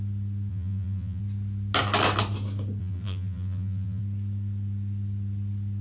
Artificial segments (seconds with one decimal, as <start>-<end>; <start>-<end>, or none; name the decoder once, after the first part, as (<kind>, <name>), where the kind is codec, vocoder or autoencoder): 0.5-1.2 (vocoder, BigVGAN v2); 2.8-4.0